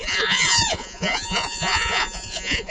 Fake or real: fake